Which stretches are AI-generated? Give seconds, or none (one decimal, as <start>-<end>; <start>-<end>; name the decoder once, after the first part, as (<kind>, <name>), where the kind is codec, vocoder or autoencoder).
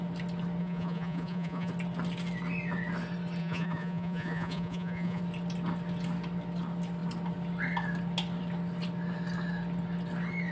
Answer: 0.6-1.7 (vocoder, Vocos); 3.4-5.2